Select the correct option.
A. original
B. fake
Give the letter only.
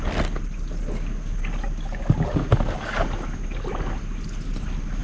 A